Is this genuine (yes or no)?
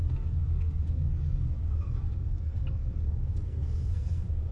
no